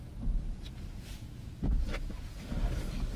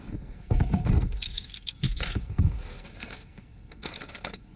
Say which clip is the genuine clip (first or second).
first